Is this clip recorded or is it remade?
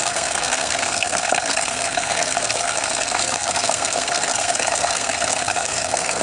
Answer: remade